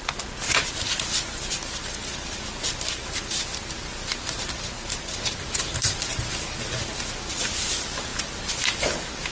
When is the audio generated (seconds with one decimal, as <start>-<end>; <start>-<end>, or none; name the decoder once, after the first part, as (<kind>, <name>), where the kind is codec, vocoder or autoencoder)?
none

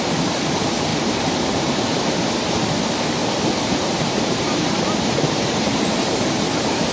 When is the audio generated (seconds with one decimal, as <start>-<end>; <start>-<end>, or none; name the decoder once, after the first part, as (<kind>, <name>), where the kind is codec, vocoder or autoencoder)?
0.9-2.8 (vocoder, BigVGAN v2); 3.2-6.9

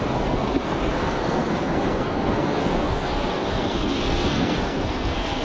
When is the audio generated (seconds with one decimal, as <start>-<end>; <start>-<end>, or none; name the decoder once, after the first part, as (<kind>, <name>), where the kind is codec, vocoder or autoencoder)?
0.0-5.4 (codec, SNAC)

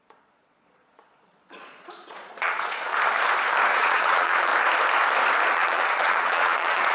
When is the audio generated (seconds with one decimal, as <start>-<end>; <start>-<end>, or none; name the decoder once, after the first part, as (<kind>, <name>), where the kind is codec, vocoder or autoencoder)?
0.0-2.9 (vocoder, Vocos); 3.7-4.5; 5.5-6.9

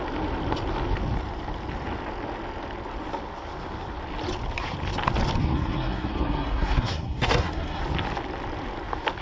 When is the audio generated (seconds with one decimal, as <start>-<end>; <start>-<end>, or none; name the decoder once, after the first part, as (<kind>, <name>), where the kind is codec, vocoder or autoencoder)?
5.4-7.8 (codec, SNAC)